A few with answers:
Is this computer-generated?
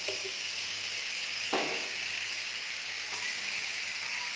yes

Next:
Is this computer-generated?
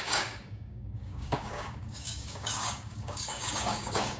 yes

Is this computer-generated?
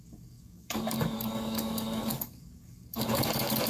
yes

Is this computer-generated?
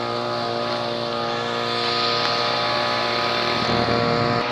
no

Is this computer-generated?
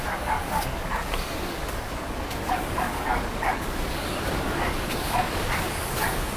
yes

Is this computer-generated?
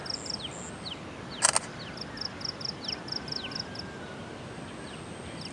no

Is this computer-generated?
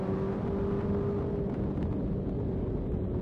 no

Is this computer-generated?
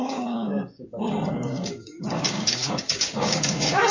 yes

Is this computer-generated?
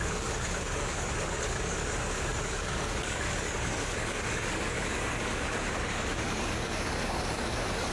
yes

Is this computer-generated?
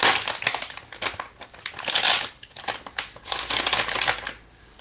no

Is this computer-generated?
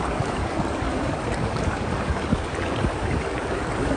yes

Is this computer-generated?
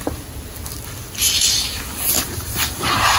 no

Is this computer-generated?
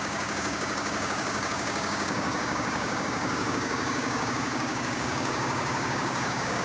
yes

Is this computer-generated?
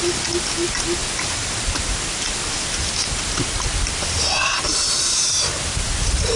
no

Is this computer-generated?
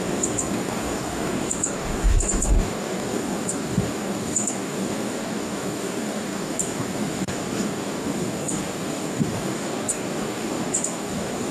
yes